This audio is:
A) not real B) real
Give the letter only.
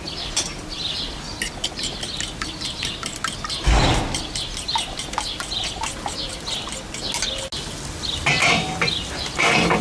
B